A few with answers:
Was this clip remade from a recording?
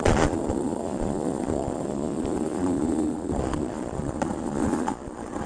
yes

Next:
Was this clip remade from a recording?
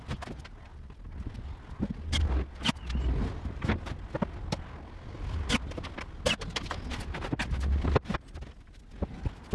no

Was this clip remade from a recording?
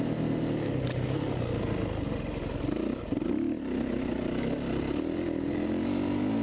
no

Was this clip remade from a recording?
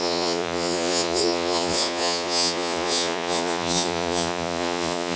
yes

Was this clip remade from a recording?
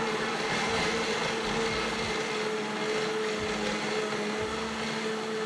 no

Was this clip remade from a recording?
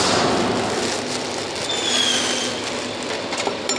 no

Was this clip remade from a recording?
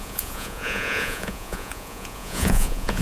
yes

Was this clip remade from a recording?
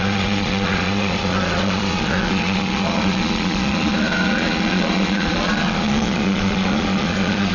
yes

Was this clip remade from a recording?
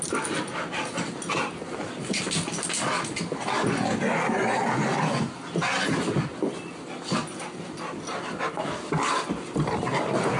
no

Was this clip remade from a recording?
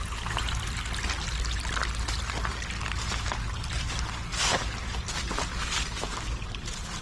no